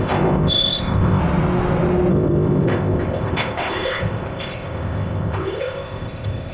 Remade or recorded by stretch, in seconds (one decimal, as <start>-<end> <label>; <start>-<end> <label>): 0.0-1.2 remade; 1.2-2.1 recorded; 2.1-6.5 remade